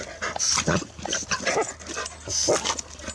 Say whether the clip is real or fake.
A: real